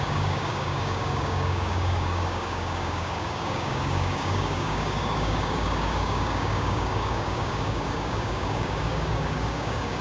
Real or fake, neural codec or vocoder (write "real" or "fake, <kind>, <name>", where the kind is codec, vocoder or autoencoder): fake, codec, DAC